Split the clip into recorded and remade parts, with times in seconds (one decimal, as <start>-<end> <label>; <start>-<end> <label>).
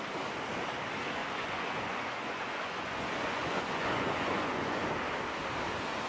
0.0-1.2 recorded; 1.2-4.9 remade; 4.9-6.1 recorded